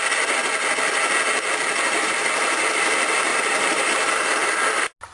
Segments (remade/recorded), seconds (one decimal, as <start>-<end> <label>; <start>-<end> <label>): 0.0-3.3 recorded; 3.3-3.9 remade; 3.9-5.1 recorded